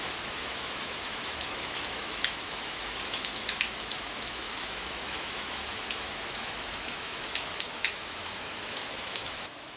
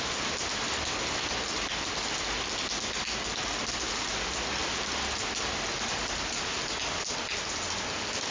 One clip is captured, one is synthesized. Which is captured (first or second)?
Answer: second